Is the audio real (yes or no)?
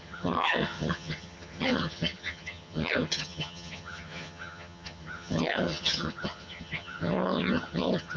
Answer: no